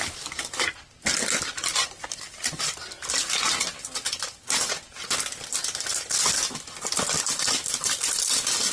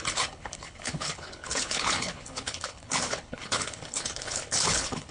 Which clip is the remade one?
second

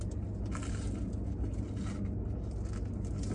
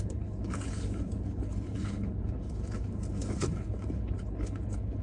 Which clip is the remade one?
second